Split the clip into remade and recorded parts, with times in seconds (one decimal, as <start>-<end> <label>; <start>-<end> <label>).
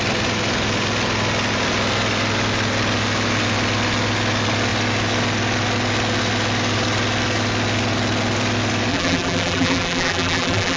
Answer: 0.0-8.9 recorded; 8.9-10.8 remade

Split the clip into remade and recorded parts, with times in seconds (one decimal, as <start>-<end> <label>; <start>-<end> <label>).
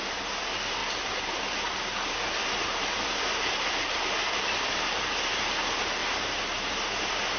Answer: 0.0-0.8 recorded; 0.8-4.8 remade; 4.8-6.0 recorded; 6.0-6.6 remade; 6.6-7.4 recorded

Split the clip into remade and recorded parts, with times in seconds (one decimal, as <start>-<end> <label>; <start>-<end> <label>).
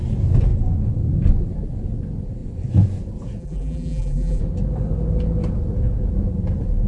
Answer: 0.0-3.4 recorded; 3.4-4.4 remade; 4.4-6.9 recorded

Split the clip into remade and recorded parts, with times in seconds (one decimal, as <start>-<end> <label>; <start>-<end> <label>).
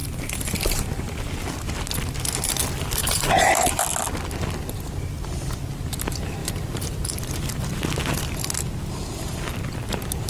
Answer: 0.0-0.9 remade; 0.9-3.0 recorded; 3.0-3.8 remade; 3.8-6.4 recorded; 6.4-7.6 remade; 7.6-10.3 recorded